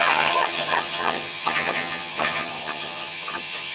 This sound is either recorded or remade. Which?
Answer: remade